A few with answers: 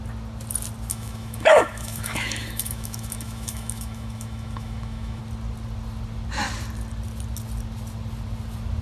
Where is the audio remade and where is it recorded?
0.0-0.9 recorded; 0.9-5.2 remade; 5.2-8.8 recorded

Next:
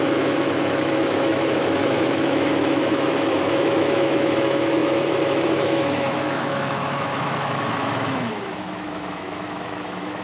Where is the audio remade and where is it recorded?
0.0-10.2 remade

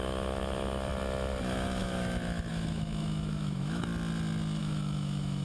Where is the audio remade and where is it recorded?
0.0-0.9 remade; 0.9-1.4 recorded; 1.4-3.9 remade; 3.9-4.6 recorded; 4.6-5.4 remade

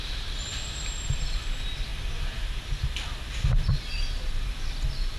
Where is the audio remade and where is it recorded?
0.0-5.2 recorded

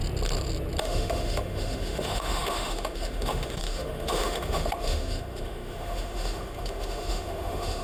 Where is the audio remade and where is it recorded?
0.0-0.8 recorded; 0.8-7.8 remade